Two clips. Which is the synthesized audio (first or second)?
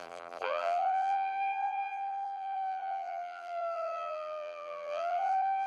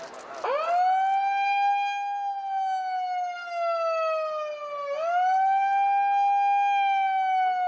first